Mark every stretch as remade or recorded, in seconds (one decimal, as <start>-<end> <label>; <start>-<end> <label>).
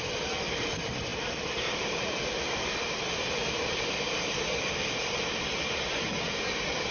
0.0-1.1 recorded; 1.1-5.2 remade; 5.2-6.9 recorded